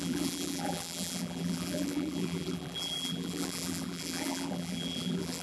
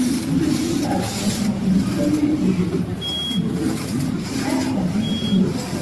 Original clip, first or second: second